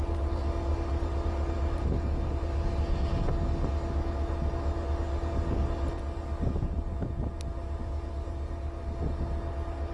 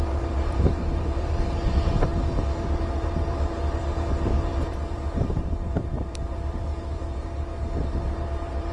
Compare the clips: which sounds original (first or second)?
first